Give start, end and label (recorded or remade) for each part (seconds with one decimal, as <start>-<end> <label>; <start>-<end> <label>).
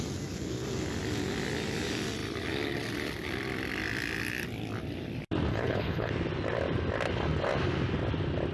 0.0-5.5 recorded; 5.5-6.1 remade; 6.1-8.5 recorded